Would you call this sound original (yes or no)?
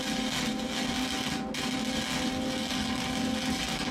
yes